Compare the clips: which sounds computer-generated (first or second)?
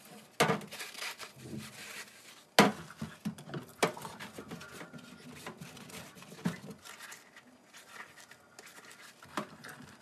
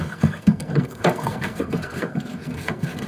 second